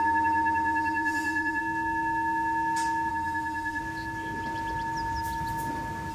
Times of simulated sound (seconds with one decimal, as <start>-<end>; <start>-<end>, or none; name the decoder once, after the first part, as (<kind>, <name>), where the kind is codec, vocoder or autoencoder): 0.0-1.6 (autoencoder, DAC-VAE); 3.1-3.8